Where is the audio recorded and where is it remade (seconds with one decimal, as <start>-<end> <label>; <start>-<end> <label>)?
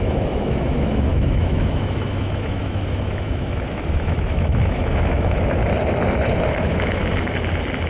0.0-5.6 remade; 5.6-6.5 recorded; 6.5-7.0 remade; 7.0-7.9 recorded